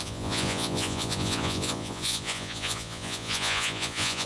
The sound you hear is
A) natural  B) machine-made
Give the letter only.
B